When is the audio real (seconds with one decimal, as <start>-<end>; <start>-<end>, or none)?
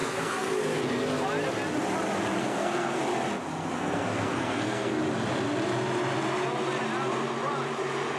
0.5-2.4; 3.0-3.5; 5.0-8.2